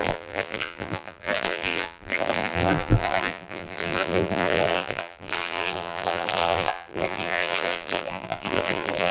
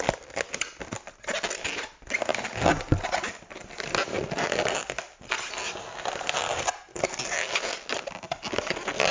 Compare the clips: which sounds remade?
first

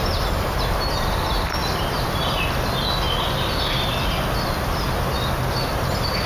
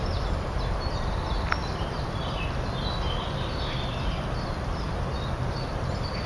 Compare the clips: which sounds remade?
second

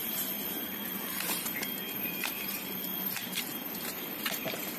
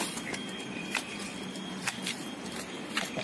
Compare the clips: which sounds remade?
first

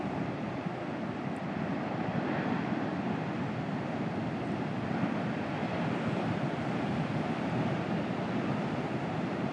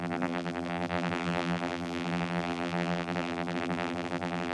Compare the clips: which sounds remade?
second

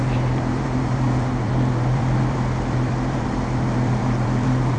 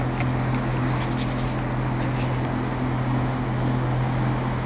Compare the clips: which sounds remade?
first